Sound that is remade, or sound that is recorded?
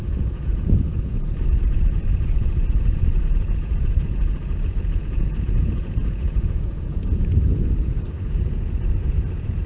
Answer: remade